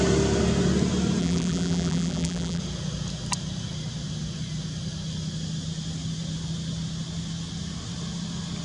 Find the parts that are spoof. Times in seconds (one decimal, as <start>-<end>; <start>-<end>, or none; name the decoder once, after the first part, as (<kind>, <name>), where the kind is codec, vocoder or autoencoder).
1.2-2.6 (vocoder, BigVGAN v2)